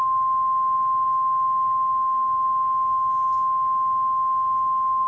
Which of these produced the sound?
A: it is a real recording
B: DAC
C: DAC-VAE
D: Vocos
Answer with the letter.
A